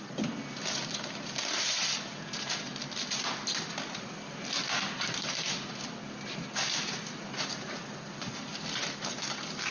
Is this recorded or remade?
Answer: recorded